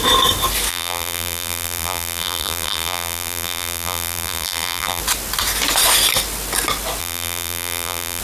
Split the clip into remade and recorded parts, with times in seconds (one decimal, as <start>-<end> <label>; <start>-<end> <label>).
0.0-0.7 recorded; 0.7-5.0 remade; 5.0-7.0 recorded; 7.0-8.2 remade